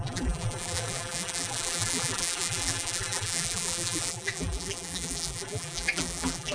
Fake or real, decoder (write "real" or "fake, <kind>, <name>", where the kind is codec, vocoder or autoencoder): fake, vocoder, BigVGAN v2